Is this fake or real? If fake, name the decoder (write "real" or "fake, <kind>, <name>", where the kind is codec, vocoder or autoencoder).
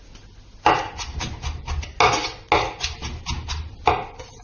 real